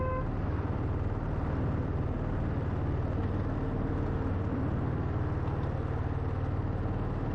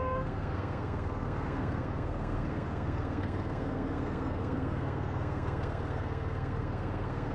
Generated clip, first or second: second